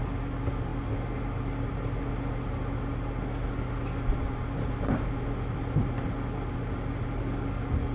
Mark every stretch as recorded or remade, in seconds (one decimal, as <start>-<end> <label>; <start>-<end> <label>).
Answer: 0.0-7.9 recorded